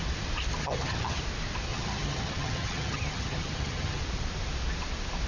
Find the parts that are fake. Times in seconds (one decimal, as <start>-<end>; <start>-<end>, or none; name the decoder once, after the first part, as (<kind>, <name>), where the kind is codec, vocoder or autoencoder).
0.6-1.2 (vocoder, HiFi-GAN); 1.7-4.0